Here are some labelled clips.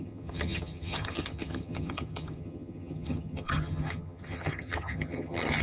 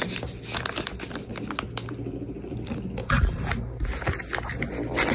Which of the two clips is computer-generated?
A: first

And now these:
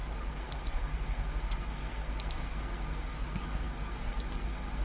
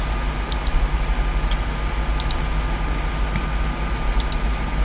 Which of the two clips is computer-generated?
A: first